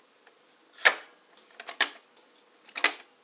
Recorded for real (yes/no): yes